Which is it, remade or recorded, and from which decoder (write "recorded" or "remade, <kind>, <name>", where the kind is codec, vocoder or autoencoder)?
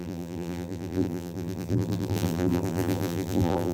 remade, vocoder, BigVGAN v2